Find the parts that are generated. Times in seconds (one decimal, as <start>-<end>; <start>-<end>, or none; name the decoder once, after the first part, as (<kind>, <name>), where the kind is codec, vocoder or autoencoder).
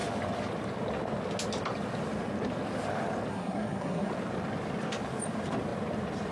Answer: 3.3-4.1 (codec, SNAC)